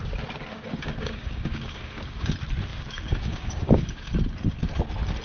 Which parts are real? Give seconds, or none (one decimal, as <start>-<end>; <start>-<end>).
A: 0.0-0.5; 2.3-2.7; 4.1-5.2